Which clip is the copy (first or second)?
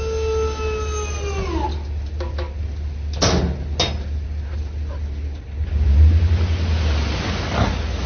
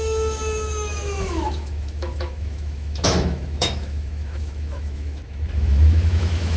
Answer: second